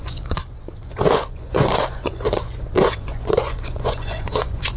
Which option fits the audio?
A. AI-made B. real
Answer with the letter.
A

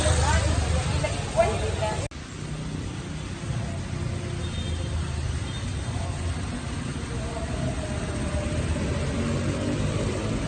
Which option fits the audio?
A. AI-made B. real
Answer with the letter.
B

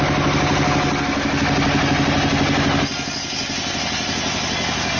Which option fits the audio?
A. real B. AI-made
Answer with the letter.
A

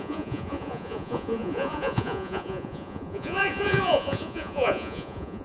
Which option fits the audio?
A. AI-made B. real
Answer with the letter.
A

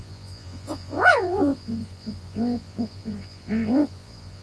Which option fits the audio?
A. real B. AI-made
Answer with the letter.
B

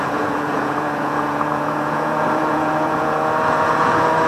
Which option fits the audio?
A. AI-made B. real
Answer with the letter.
A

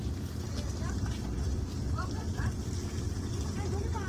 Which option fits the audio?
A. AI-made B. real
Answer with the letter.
B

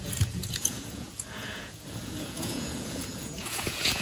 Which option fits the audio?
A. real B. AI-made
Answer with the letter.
B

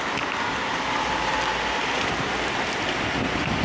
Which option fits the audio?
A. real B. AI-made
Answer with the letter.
A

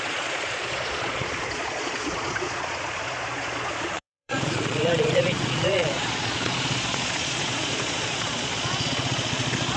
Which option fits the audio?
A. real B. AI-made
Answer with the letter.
B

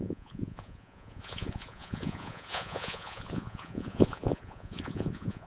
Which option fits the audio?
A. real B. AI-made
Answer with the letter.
B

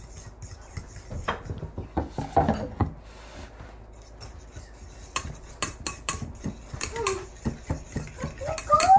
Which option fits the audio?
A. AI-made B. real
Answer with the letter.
B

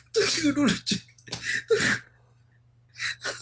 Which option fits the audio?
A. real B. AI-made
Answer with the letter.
A